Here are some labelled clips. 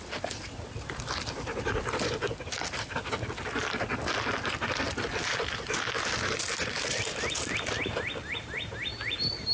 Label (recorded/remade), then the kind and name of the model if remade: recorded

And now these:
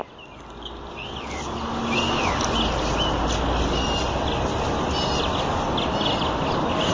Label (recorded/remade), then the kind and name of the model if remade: recorded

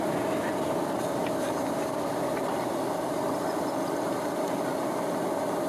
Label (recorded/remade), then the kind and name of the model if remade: recorded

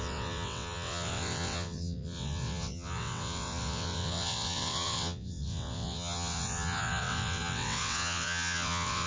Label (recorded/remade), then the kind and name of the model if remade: remade, vocoder, WaveNeXt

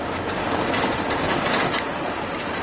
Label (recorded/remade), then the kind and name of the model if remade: recorded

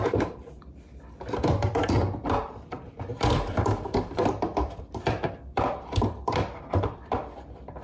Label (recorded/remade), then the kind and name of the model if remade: remade, vocoder, BigVGAN v2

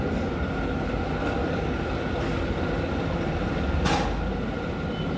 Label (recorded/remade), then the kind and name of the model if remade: recorded